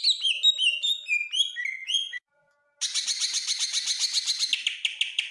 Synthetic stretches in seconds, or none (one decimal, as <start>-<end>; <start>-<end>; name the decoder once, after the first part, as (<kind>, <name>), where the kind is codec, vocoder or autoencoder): 1.8-2.5 (vocoder, Vocos)